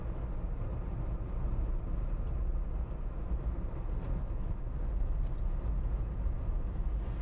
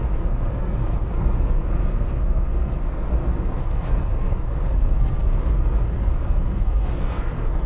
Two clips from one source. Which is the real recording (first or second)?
first